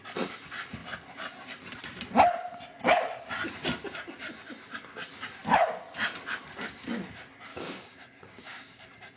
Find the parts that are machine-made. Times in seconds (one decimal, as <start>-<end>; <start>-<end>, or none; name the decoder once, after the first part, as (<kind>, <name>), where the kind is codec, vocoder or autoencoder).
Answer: 7.5-9.2 (codec, DAC)